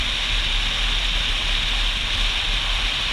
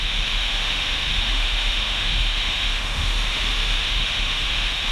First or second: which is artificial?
second